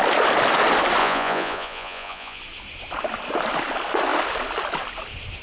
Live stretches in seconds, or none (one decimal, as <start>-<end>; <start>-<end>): 0.0-1.0; 2.4-5.4